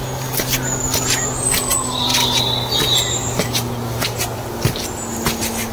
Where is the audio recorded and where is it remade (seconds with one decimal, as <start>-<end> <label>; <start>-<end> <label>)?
0.0-5.7 recorded